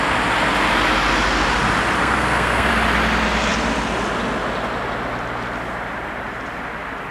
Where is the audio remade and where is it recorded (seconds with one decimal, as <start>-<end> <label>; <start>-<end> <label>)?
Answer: 0.0-2.0 recorded; 2.0-2.7 remade; 2.7-7.1 recorded

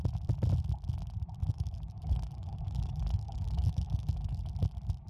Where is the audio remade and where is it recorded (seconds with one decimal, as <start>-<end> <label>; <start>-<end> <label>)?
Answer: 0.0-1.4 recorded; 1.4-4.5 remade; 4.5-5.1 recorded

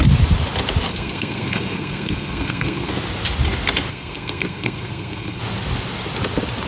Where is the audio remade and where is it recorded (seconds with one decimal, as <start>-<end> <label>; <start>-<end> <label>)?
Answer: 0.0-0.9 recorded; 0.9-2.9 remade; 2.9-3.9 recorded; 3.9-5.4 remade; 5.4-6.7 recorded